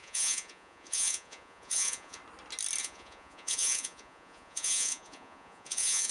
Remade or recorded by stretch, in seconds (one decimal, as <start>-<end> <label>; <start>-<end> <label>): 0.0-2.2 remade; 2.2-2.8 recorded; 2.8-6.1 remade